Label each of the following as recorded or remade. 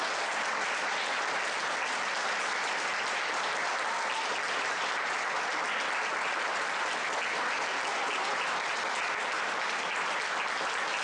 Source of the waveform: recorded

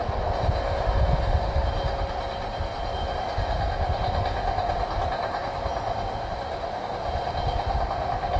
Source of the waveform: recorded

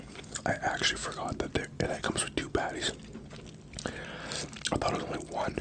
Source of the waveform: recorded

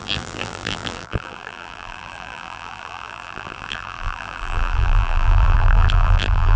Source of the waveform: remade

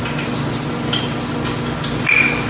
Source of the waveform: recorded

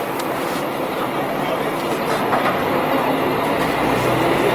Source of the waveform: remade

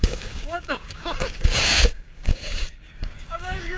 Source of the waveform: remade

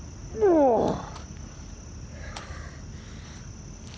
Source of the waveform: recorded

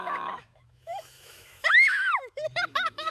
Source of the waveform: remade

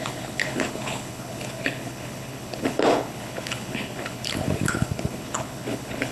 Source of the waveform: remade